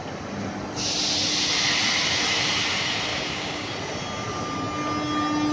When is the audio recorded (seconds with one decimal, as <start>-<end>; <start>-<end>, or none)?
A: 0.0-3.1; 3.7-5.5